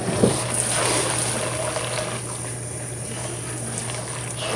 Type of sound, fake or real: real